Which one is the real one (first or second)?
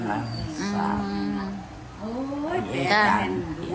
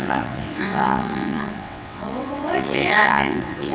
first